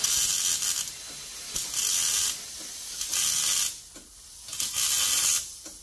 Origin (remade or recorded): recorded